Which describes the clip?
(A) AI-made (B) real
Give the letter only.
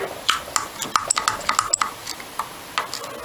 B